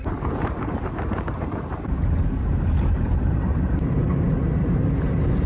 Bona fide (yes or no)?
no